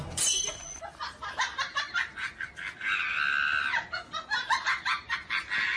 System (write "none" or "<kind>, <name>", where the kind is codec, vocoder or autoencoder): none